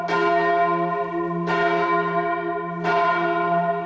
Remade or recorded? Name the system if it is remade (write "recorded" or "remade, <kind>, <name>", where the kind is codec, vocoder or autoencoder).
recorded